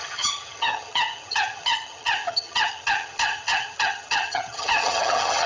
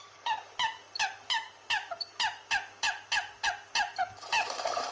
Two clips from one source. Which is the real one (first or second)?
second